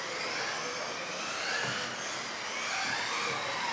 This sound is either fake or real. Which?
real